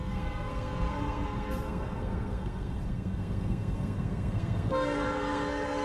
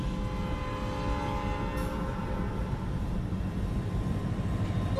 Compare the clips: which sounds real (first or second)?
second